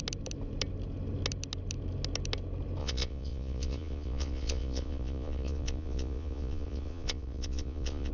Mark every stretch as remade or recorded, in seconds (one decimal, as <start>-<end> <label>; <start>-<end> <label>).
0.0-2.8 recorded; 2.8-8.1 remade